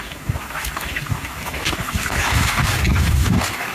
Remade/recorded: remade